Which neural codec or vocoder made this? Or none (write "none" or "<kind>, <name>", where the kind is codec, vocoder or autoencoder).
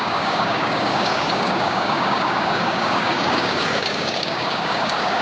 codec, DAC